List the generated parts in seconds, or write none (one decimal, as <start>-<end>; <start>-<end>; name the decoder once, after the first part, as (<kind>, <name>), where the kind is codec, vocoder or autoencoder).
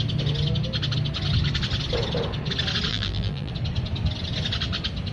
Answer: 2.9-3.5 (vocoder, BigVGAN v2)